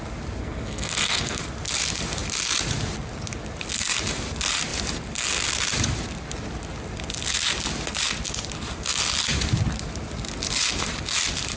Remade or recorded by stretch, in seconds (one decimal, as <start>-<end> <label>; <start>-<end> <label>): 0.0-0.4 recorded; 0.4-1.4 remade; 1.4-11.6 recorded

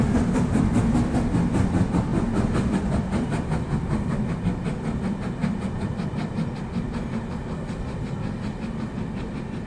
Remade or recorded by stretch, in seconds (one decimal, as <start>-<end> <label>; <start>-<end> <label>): 0.0-9.7 recorded

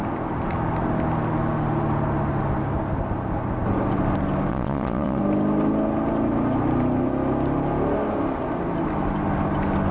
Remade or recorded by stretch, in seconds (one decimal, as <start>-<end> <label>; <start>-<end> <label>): 0.0-4.5 recorded; 4.5-5.2 remade; 5.2-9.9 recorded

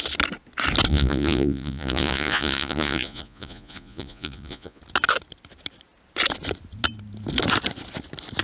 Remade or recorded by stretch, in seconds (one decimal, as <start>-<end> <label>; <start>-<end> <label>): 0.0-0.9 recorded; 0.9-4.8 remade; 4.8-8.4 recorded

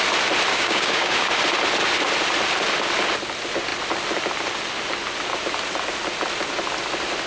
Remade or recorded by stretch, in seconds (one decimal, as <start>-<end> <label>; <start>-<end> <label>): 0.0-0.5 recorded; 0.5-1.4 remade; 1.4-7.3 recorded

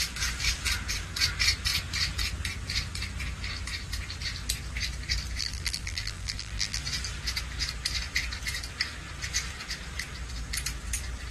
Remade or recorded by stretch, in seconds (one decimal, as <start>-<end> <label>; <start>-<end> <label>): 0.0-5.4 recorded; 5.4-6.8 remade; 6.8-11.3 recorded

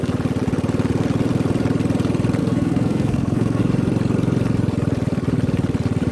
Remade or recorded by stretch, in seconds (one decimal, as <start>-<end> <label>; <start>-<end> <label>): 0.0-2.4 recorded; 2.4-3.6 remade; 3.6-6.1 recorded